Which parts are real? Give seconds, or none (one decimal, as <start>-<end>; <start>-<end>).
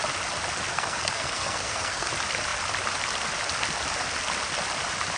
0.0-0.7; 2.1-5.2